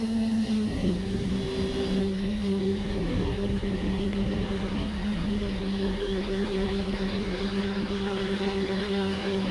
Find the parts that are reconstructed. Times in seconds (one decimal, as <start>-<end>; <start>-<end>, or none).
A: 0.0-1.3; 2.0-9.5